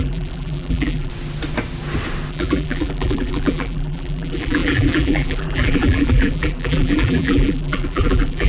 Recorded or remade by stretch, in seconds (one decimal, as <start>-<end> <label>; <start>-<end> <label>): 0.0-1.1 remade; 1.1-2.3 recorded; 2.3-8.5 remade